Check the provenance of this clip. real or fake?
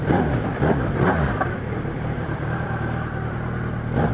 fake